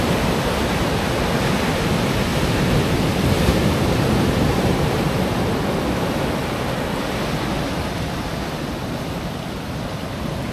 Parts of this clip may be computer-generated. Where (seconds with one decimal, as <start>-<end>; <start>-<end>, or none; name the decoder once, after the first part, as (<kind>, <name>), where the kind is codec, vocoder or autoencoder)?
2.3-5.6 (vocoder, BigVGAN v2)